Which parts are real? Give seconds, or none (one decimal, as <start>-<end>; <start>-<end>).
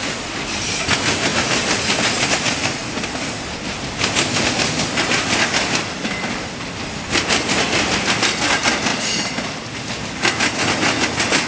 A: 0.0-11.5